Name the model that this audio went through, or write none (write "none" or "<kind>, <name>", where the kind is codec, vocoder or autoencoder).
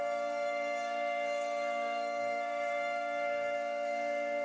codec, SNAC